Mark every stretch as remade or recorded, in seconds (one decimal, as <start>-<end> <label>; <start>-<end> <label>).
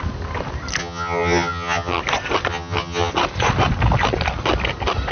0.0-0.8 recorded; 0.8-2.0 remade; 2.0-2.5 recorded; 2.5-3.1 remade; 3.1-5.1 recorded